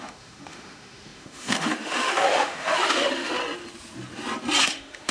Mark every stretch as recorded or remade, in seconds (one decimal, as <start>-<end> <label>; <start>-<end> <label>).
0.0-3.4 remade; 3.4-4.6 recorded; 4.6-5.1 remade